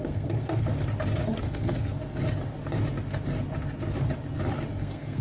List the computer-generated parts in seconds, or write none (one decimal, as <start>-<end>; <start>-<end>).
0.0-0.7; 1.4-1.9; 4.7-5.2